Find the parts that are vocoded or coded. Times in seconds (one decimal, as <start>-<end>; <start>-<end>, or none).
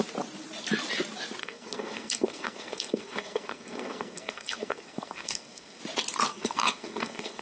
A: 1.4-5.8; 6.3-7.4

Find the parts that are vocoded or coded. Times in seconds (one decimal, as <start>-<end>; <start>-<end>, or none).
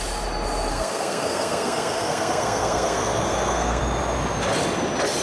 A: 0.7-3.8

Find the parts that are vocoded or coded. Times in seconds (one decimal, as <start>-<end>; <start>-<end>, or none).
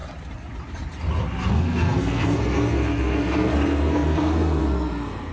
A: 1.5-5.3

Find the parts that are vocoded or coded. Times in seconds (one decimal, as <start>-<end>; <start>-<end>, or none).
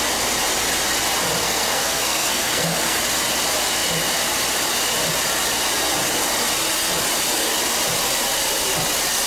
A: 1.4-3.0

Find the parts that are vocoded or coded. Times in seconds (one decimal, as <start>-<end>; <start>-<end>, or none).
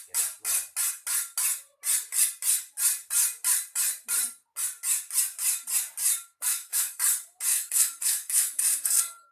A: 6.4-7.0; 7.5-9.3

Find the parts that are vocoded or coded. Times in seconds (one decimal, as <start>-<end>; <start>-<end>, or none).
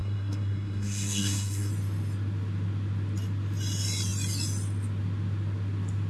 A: 0.0-1.7